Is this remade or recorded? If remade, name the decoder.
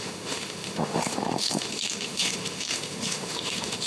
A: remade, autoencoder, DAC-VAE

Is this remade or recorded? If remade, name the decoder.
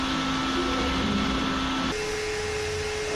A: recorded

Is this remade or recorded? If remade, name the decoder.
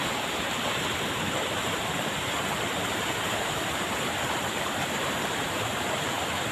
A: remade, vocoder, BigVGAN v2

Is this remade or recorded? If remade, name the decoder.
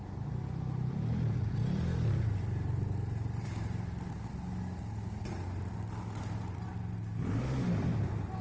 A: recorded